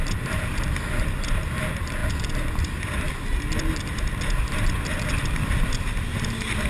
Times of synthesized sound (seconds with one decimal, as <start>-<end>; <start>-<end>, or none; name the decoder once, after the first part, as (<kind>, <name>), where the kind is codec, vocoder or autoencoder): none